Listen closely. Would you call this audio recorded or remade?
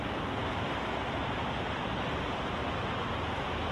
recorded